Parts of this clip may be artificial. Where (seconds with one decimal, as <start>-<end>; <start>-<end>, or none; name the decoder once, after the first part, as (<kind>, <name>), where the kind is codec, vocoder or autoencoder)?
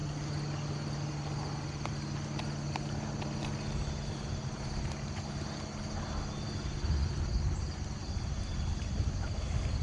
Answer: none